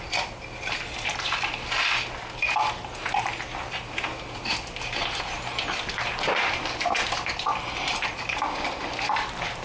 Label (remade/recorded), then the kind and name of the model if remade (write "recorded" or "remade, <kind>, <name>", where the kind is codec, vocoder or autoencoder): recorded